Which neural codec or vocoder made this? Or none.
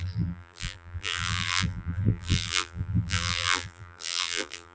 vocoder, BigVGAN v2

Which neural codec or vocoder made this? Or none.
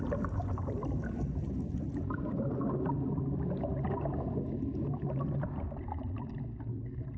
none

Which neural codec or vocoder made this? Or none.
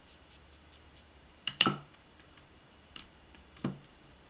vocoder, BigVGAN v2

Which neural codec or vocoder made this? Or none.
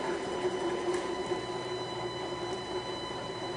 vocoder, BigVGAN v2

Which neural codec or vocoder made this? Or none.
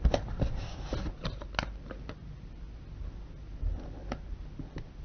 none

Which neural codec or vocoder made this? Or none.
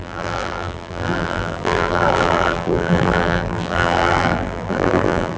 vocoder, BigVGAN v2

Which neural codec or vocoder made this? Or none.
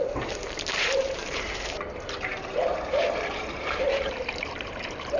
vocoder, BigVGAN v2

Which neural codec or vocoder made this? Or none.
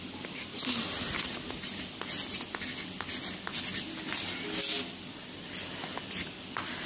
none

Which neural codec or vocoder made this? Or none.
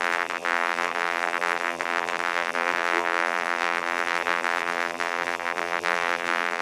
vocoder, BigVGAN v2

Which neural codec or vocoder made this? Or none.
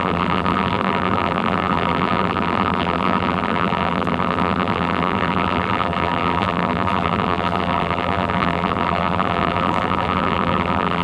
vocoder, BigVGAN v2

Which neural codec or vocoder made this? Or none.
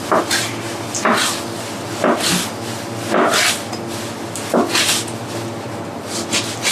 none